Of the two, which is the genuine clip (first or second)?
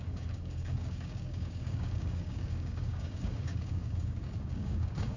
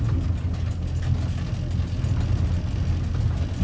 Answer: second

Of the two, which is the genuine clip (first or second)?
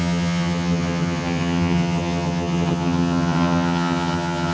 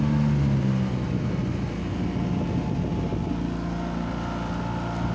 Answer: second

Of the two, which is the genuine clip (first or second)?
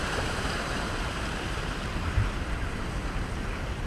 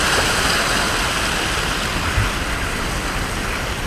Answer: second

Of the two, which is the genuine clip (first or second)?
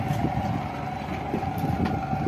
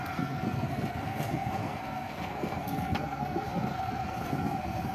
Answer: first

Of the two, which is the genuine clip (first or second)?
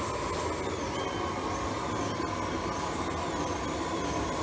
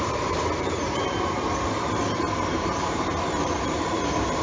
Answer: first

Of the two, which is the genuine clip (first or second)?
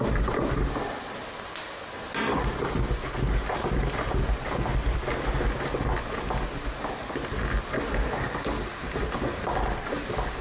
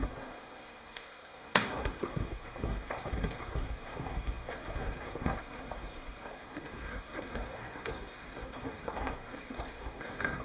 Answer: first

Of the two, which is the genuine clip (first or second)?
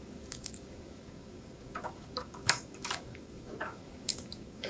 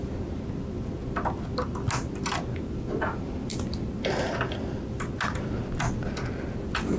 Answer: second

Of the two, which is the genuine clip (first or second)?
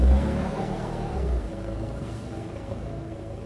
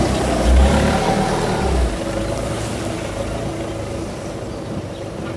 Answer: second